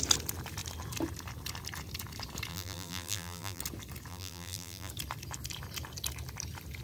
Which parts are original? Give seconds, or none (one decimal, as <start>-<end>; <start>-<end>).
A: 0.0-2.5; 3.6-4.1; 4.9-6.8